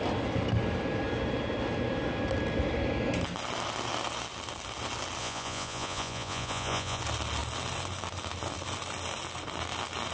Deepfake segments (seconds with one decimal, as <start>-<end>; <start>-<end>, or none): 5.2-7.0